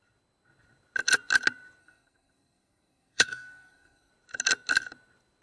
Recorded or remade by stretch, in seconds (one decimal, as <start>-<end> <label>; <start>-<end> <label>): 0.0-1.8 recorded; 1.8-4.1 remade; 4.1-5.4 recorded